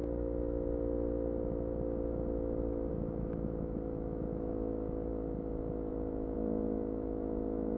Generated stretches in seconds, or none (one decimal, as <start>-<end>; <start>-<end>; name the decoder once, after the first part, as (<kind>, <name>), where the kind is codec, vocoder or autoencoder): 2.9-5.1 (autoencoder, DAC-VAE); 5.9-7.8